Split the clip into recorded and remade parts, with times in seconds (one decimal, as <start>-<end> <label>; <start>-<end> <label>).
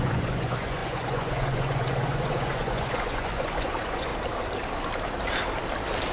0.0-4.1 remade; 4.1-6.1 recorded